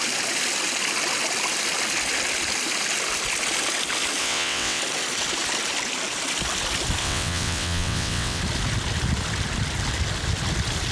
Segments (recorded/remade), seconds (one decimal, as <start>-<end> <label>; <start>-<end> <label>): 0.0-4.2 recorded; 4.2-4.8 remade; 4.8-7.0 recorded; 7.0-8.4 remade; 8.4-10.9 recorded